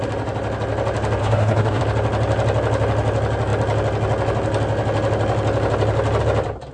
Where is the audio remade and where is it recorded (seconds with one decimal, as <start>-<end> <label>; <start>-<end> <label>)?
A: 0.0-1.2 recorded; 1.2-1.8 remade; 1.8-6.7 recorded